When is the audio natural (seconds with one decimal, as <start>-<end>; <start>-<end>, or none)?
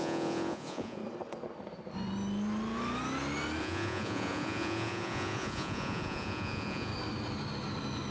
1.0-3.6; 6.9-8.1